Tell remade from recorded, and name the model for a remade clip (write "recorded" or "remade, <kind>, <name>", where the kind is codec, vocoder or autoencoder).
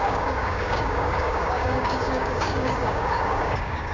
remade, codec, DAC